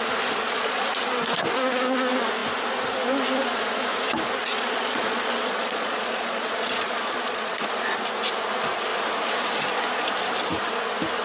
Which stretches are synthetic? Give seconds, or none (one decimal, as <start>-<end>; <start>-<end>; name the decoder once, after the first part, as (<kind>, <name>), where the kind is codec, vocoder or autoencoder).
0.4-1.0 (vocoder, Vocos); 4.4-7.6